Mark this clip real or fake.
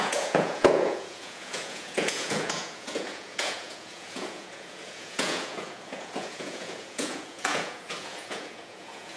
fake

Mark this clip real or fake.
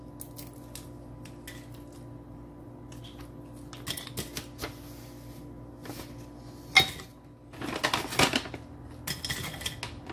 real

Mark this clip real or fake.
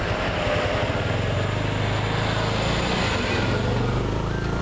real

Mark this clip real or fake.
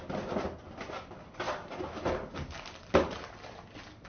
real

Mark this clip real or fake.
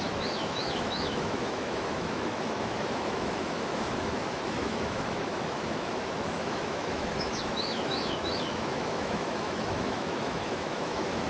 fake